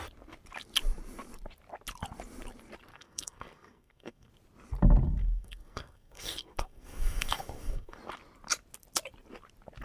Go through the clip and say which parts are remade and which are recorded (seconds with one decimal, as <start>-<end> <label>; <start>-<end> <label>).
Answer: 0.0-2.9 recorded; 2.9-4.3 remade; 4.3-5.2 recorded; 5.2-8.0 remade; 8.0-9.8 recorded